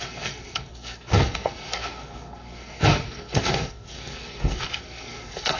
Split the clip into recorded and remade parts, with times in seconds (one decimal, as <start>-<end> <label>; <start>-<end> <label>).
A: 0.0-5.6 remade